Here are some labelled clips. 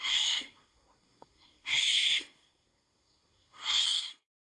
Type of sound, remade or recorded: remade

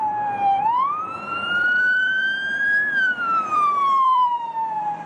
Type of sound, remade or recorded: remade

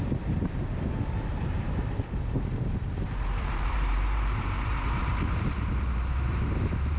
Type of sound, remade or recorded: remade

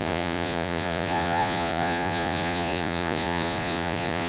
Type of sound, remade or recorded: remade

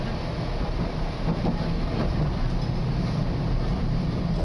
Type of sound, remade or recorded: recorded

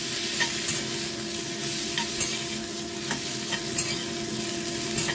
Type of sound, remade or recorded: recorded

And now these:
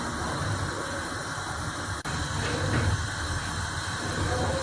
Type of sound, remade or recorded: recorded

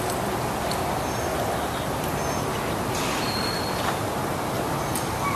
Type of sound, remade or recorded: recorded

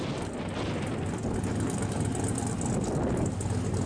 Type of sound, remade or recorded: recorded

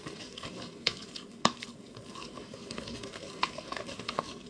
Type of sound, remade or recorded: remade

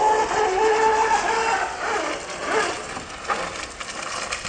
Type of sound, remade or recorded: recorded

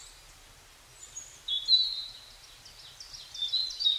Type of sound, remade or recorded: recorded